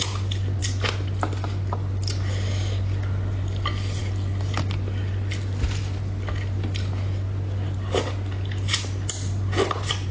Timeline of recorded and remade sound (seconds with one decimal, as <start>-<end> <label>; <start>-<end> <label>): 0.0-10.1 recorded